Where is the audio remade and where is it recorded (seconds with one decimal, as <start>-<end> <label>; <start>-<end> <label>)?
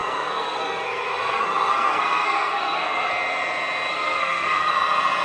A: 0.0-3.1 remade; 3.1-3.9 recorded; 3.9-4.7 remade; 4.7-5.2 recorded